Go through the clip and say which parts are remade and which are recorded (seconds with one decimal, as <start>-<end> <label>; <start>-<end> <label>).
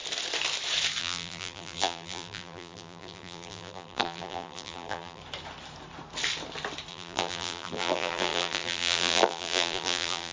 0.0-1.0 recorded; 1.0-5.2 remade; 5.2-6.9 recorded; 6.9-10.3 remade